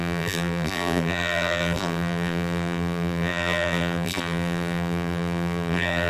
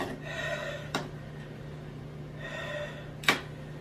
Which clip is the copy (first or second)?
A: first